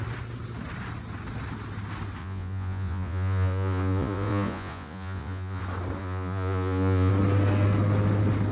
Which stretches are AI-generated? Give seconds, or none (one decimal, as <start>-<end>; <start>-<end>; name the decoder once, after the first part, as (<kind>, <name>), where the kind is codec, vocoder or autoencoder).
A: 2.2-5.6 (vocoder, Vocos); 6.0-7.1